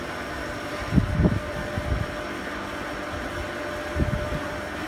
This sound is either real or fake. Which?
real